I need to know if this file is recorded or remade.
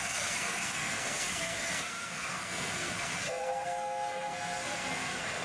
remade